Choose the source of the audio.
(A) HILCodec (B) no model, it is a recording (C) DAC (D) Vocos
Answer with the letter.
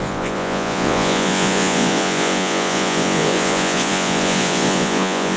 D